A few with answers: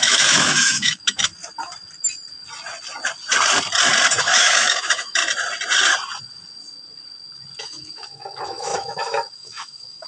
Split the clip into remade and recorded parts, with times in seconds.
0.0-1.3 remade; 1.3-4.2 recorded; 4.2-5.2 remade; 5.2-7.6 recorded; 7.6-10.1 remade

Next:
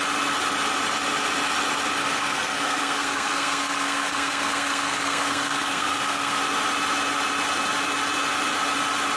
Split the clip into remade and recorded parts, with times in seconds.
0.0-2.0 recorded; 2.0-6.4 remade; 6.4-9.2 recorded